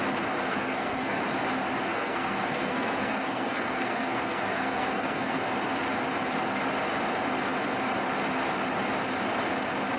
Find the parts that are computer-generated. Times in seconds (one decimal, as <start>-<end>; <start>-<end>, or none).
0.5-1.2; 1.9-5.4